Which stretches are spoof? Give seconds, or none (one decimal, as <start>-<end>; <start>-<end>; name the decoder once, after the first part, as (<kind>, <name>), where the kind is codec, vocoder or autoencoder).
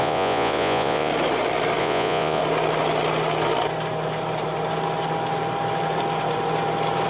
0.0-1.1 (vocoder, Vocos); 1.8-2.4